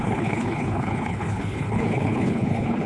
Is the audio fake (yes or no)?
yes